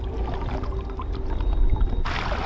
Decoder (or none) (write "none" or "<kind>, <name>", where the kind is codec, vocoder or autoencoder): none